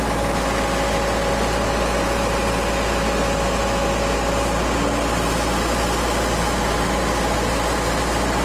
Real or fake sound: real